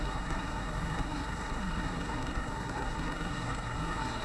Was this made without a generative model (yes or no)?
no